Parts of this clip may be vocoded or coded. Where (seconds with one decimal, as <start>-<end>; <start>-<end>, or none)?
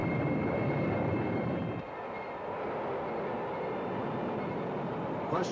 0.0-1.6; 4.5-5.5